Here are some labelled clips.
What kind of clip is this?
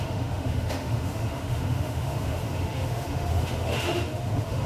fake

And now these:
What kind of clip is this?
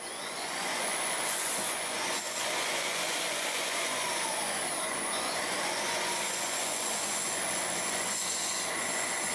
fake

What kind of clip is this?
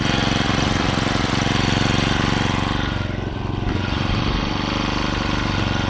real